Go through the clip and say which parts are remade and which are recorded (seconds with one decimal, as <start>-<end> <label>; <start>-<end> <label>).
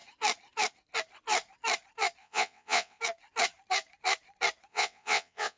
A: 0.0-2.2 recorded; 2.2-3.0 remade; 3.0-4.7 recorded; 4.7-5.6 remade